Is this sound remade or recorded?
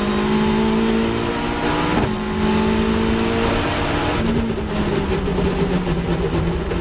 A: recorded